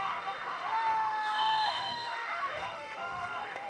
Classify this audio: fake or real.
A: fake